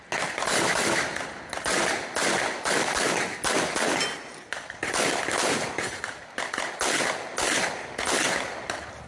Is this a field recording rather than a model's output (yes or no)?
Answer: yes